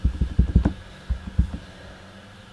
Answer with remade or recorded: recorded